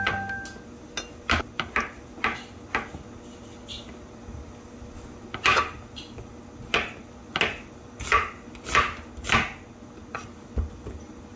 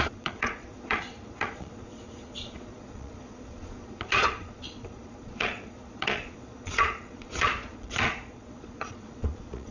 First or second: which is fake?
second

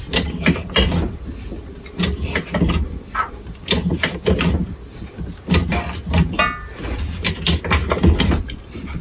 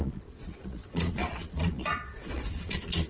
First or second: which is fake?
second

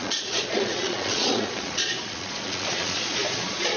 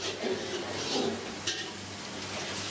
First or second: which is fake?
first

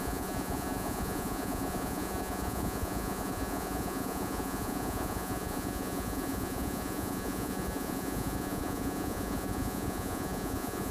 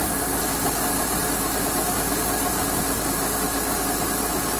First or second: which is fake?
first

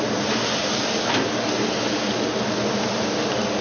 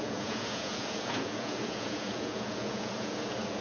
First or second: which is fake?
second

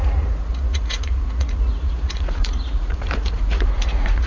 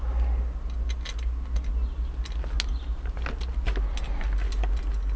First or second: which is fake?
first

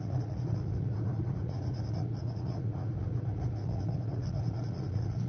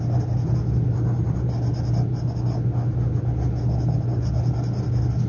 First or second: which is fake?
first